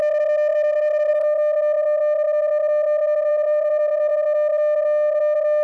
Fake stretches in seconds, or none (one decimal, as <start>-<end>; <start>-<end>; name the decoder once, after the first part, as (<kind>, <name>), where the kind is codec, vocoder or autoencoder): 0.5-1.1 (vocoder, BigVGAN v2); 3.3-4.1